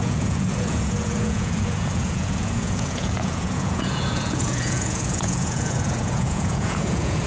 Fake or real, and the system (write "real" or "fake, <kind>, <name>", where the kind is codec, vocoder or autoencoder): fake, vocoder, Vocos